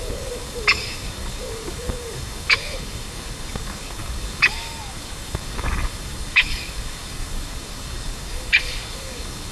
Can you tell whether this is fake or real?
fake